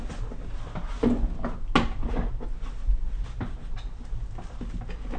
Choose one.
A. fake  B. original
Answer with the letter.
B